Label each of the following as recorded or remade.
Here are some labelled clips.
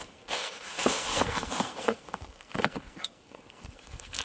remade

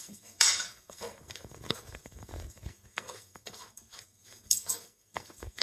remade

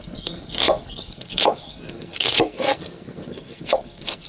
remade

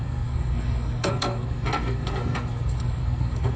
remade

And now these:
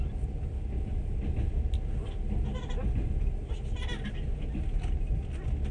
recorded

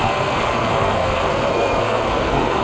remade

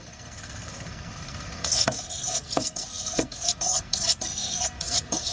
remade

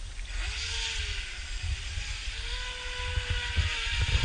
recorded